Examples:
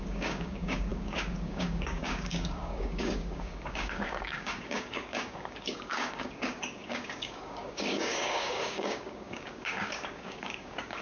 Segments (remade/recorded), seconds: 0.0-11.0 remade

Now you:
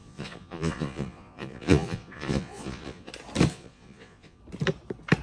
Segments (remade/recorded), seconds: 0.0-3.1 remade; 3.1-3.5 recorded; 3.5-4.4 remade; 4.4-5.2 recorded